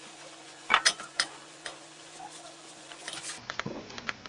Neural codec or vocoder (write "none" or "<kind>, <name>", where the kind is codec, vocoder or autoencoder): vocoder, Vocos